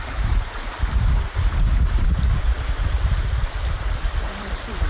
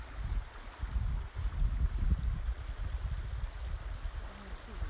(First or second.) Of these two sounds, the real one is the second